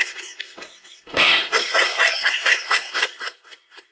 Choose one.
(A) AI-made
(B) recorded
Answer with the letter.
A